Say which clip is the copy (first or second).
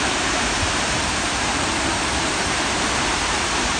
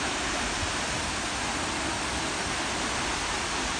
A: first